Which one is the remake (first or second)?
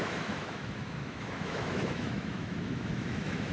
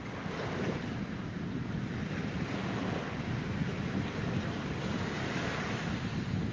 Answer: first